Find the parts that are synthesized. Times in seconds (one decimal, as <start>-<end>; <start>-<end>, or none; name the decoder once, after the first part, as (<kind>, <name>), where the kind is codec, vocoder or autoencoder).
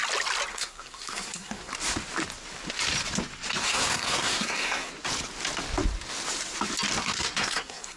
0.5-1.7 (codec, SNAC); 3.6-4.9; 7.0-8.0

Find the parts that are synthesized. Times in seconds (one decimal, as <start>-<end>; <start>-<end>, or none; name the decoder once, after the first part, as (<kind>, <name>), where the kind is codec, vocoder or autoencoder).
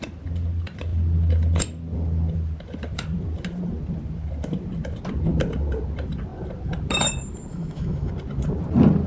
7.5-8.1 (autoencoder, DAC-VAE)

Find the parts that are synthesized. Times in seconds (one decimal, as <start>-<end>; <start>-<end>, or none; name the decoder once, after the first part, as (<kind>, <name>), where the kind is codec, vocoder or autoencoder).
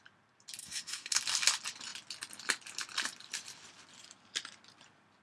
0.6-1.2 (codec, SNAC)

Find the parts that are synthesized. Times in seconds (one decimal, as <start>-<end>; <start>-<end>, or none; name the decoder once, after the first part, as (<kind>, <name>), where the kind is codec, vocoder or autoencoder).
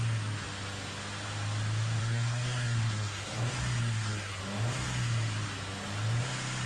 2.0-3.4 (codec, SNAC); 3.8-4.4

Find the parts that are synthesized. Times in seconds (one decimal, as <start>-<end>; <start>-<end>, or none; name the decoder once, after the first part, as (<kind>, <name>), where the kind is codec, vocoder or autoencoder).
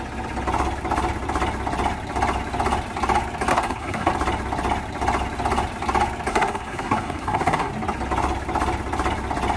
3.5-4.1 (codec, SNAC); 6.3-7.7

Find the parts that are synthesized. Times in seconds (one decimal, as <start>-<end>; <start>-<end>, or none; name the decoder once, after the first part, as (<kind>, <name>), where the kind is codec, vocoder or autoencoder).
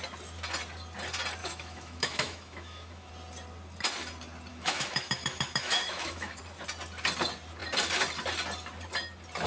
1.4-3.1 (autoencoder, DAC-VAE); 4.5-6.4